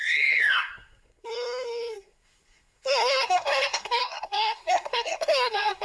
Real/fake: fake